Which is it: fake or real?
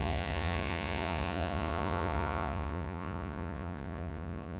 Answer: fake